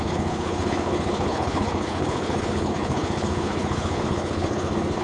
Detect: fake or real fake